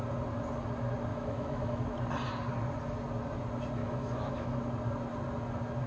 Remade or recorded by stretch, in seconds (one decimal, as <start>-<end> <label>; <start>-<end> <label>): 0.0-1.1 recorded; 1.1-1.8 remade; 1.8-3.8 recorded; 3.8-4.5 remade; 4.5-5.9 recorded